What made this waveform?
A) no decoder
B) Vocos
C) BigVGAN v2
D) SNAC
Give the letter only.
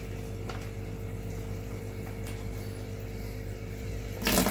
A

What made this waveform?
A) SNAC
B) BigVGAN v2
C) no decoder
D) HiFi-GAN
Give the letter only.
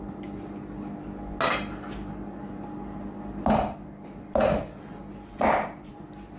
C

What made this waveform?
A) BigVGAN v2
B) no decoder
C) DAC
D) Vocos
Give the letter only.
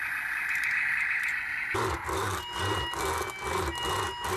B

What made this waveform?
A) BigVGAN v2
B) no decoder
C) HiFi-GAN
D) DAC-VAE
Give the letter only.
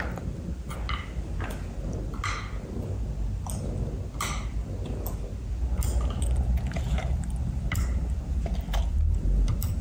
B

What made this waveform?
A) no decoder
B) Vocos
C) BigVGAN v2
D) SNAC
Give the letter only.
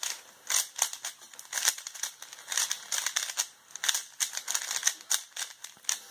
A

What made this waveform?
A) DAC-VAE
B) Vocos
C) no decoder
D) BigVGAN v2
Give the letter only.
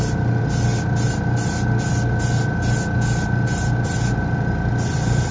C